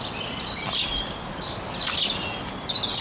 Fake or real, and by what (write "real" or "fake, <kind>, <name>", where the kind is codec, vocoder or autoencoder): real